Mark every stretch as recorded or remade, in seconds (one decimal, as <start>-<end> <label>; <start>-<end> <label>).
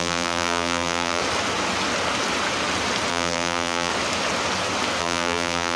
0.0-1.2 remade; 1.2-3.1 recorded; 3.1-3.9 remade; 3.9-5.0 recorded; 5.0-5.8 remade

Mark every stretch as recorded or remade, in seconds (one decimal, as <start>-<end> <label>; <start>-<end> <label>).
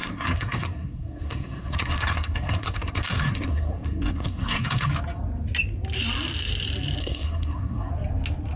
0.0-4.9 remade; 4.9-7.0 recorded; 7.0-7.9 remade; 7.9-8.6 recorded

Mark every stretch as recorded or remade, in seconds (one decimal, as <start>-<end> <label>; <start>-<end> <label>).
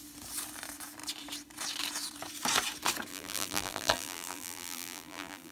0.0-3.1 recorded; 3.1-5.5 remade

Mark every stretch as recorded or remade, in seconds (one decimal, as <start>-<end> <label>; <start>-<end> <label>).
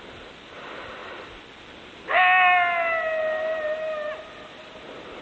0.0-5.2 recorded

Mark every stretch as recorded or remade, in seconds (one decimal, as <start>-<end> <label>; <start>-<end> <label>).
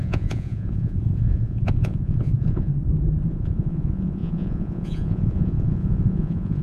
0.0-2.7 remade; 2.7-3.3 recorded; 3.3-6.6 remade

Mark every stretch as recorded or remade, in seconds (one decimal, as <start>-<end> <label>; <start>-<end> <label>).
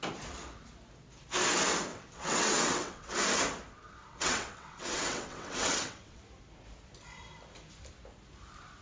0.0-1.9 recorded; 1.9-3.1 remade; 3.1-4.1 recorded; 4.1-6.2 remade; 6.2-8.8 recorded